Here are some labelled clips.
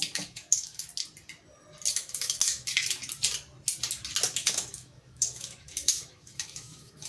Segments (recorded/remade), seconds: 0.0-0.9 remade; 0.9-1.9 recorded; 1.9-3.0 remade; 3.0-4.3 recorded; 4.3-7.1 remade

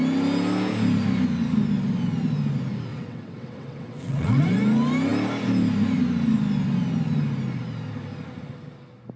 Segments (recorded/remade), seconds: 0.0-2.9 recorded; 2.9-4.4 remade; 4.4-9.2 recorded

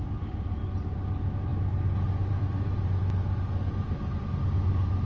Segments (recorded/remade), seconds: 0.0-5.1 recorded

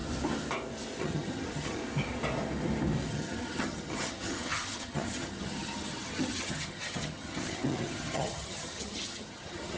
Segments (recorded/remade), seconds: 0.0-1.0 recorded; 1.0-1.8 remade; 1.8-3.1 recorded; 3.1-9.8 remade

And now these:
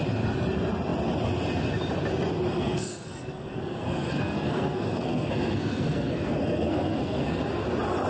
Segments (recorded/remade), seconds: 0.0-2.5 recorded; 2.5-7.4 remade; 7.4-8.1 recorded

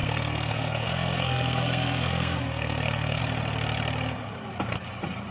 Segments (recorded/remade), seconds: 0.0-3.2 remade; 3.2-5.3 recorded

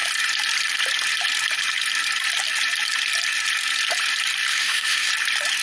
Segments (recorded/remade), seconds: 0.0-4.5 recorded; 4.5-5.1 remade; 5.1-5.6 recorded